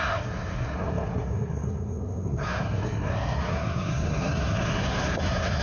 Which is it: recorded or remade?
remade